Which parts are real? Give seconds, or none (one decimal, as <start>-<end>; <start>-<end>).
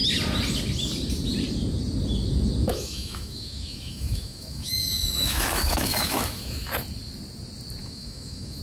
0.0-2.7; 6.7-7.8